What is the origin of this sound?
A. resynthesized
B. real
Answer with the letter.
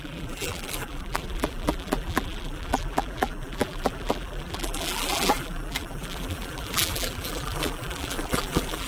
A